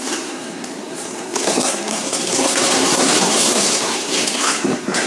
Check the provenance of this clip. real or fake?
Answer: fake